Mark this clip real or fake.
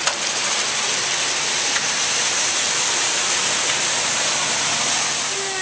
real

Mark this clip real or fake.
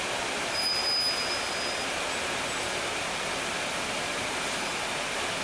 real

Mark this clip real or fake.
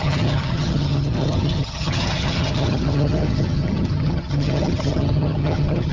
fake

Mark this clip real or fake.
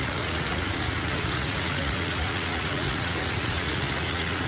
fake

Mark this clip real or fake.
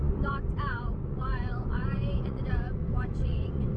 fake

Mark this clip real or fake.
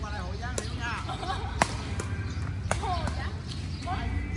real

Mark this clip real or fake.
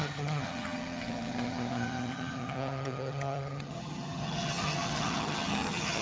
fake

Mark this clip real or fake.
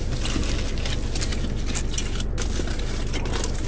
real